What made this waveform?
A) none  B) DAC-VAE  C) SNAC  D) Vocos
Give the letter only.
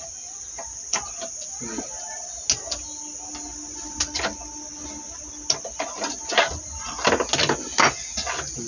A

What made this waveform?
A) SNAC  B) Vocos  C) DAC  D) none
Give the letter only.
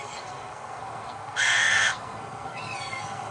A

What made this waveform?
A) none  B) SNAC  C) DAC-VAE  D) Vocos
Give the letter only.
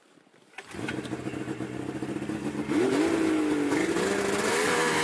A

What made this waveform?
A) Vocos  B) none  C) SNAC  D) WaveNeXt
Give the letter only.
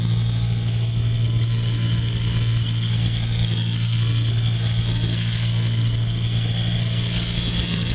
C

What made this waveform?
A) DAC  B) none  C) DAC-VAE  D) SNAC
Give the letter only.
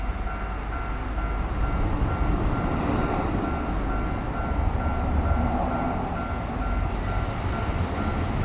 B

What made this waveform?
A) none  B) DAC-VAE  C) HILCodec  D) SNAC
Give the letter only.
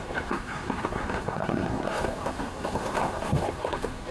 D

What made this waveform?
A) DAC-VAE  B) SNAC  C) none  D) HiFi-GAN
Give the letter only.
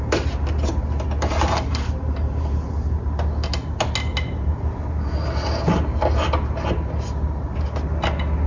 C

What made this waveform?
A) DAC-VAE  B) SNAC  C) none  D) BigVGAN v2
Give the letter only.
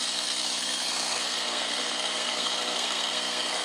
B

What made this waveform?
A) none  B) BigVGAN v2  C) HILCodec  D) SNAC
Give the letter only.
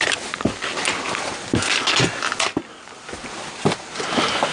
A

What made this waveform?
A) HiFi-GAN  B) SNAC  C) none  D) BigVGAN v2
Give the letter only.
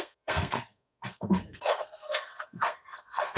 B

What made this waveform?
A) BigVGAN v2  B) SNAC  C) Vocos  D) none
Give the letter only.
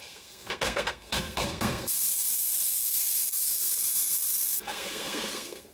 B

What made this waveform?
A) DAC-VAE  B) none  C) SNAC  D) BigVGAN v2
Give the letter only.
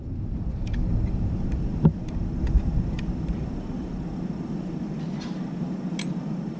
B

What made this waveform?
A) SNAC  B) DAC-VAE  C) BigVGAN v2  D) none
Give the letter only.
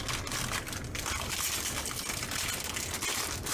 D